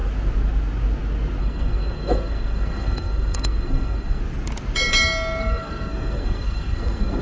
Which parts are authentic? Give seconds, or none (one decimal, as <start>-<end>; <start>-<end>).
0.0-1.4; 4.2-5.4